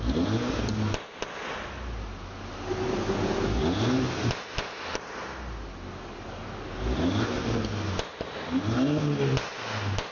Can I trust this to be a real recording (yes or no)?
yes